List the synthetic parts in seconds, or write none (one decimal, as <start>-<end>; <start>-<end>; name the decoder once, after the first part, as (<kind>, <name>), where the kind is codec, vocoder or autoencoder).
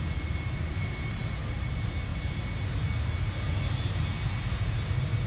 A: none